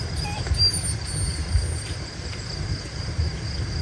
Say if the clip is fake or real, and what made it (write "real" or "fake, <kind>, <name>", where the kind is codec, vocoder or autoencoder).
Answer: real